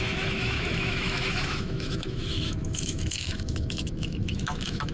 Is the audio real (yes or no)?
no